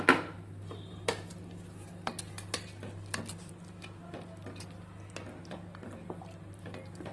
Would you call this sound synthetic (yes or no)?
no